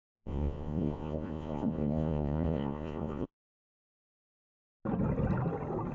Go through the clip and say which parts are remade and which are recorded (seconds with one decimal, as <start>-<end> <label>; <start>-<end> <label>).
0.0-3.5 remade; 3.5-5.9 recorded